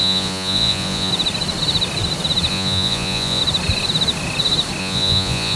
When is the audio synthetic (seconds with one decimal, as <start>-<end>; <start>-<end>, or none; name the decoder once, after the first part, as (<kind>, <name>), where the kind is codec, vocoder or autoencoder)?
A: 0.0-1.1 (vocoder, Vocos); 2.5-3.4; 4.8-5.6